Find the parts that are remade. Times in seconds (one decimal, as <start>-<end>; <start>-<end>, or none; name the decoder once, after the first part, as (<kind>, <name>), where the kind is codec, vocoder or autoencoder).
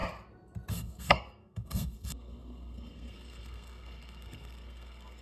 0.7-5.2 (codec, SNAC)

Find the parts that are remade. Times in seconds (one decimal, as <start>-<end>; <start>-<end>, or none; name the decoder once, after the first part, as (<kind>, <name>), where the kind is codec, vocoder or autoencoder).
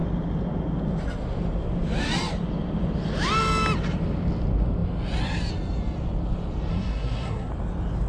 6.7-7.5 (codec, SNAC)